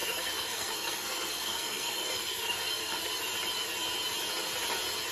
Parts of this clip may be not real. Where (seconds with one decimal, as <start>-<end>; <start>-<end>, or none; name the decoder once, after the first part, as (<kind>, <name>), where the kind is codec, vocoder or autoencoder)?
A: 0.0-3.1 (codec, SNAC)